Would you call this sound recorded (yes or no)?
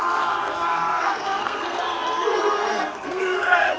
no